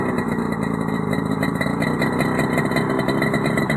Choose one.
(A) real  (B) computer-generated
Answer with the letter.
A